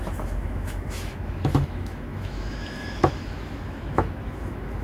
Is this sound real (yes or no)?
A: no